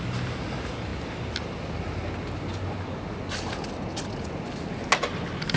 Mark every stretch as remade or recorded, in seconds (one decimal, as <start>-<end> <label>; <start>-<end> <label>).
0.0-5.6 recorded